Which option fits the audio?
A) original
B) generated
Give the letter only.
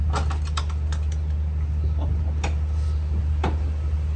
A